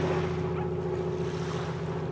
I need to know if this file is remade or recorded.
recorded